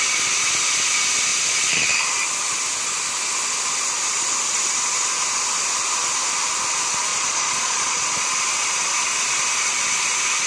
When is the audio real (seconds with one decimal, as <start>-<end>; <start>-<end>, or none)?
0.0-7.1; 8.2-10.5